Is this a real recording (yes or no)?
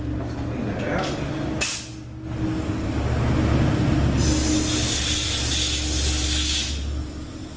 yes